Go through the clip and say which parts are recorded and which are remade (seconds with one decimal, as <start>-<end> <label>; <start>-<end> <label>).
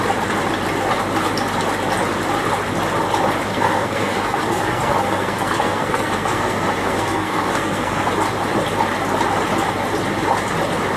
0.0-3.5 recorded; 3.5-8.1 remade; 8.1-11.0 recorded